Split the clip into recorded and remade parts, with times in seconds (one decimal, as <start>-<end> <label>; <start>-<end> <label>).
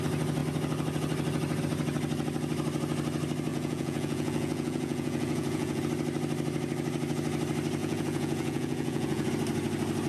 0.0-3.5 recorded; 3.5-5.8 remade; 5.8-7.8 recorded; 7.8-9.3 remade; 9.3-10.1 recorded